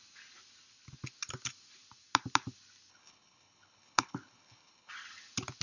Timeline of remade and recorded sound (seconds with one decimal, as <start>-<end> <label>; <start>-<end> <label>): 0.0-2.9 recorded; 2.9-4.9 remade; 4.9-5.6 recorded